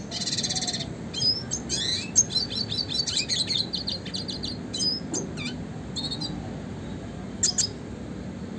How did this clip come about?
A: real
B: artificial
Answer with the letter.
A